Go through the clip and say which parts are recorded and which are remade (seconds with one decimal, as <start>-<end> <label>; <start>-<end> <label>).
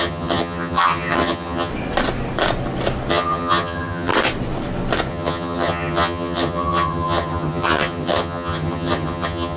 0.0-1.7 remade; 1.7-3.1 recorded; 3.1-4.1 remade; 4.1-5.1 recorded; 5.1-9.6 remade